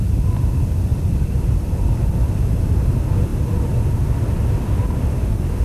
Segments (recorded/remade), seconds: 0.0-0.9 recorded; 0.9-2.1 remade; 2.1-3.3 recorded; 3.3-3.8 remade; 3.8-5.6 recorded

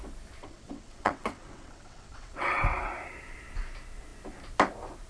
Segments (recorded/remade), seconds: 0.0-0.4 recorded; 0.4-2.9 remade; 2.9-5.1 recorded